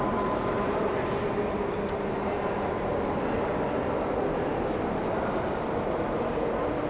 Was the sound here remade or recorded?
recorded